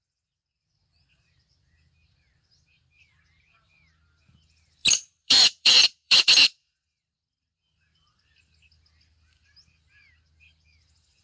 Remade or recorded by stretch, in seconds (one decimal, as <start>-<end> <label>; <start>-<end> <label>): 0.0-4.8 recorded; 4.8-7.6 remade; 7.6-11.2 recorded